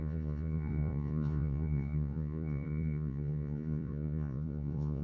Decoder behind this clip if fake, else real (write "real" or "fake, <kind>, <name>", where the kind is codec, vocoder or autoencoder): fake, vocoder, Vocos